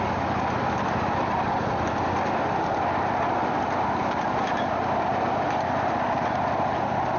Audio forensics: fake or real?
real